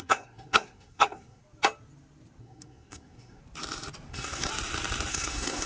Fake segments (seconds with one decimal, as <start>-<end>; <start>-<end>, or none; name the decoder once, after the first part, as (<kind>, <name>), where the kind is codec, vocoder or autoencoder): 0.0-1.4 (codec, SNAC); 2.4-3.4; 4.1-4.5; 5.1-5.7